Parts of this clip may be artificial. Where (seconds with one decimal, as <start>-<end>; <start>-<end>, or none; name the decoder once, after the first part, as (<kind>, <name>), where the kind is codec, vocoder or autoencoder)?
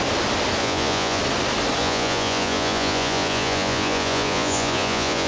0.6-1.2 (vocoder, Vocos); 1.8-5.3